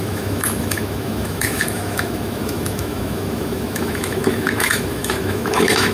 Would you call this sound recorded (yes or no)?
no